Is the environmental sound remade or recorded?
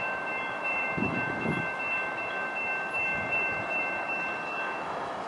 remade